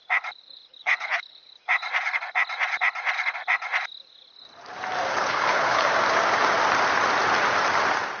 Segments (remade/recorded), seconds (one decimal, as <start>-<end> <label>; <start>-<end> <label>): 0.0-0.8 recorded; 0.8-1.4 remade; 1.4-5.1 recorded; 5.1-5.9 remade; 5.9-8.2 recorded